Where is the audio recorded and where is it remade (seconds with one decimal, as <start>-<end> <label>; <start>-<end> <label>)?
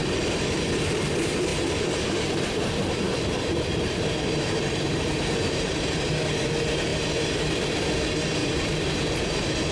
0.0-1.5 recorded; 1.5-6.1 remade; 6.1-6.9 recorded; 6.9-7.6 remade; 7.6-8.4 recorded; 8.4-9.0 remade; 9.0-9.7 recorded